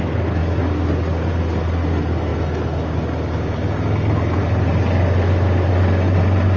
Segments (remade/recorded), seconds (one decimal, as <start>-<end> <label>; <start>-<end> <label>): 0.0-6.6 recorded